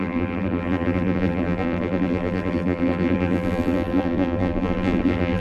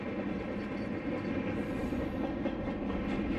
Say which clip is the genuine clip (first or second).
second